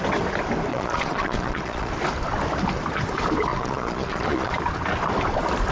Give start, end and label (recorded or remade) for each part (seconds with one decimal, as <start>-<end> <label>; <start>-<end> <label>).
0.0-0.7 recorded; 0.7-1.9 remade; 1.9-3.5 recorded; 3.5-4.5 remade; 4.5-5.7 recorded